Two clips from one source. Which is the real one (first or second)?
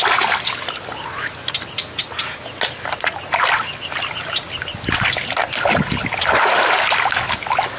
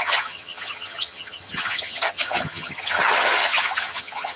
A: first